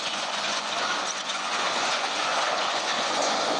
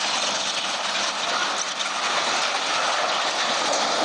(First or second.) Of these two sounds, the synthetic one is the first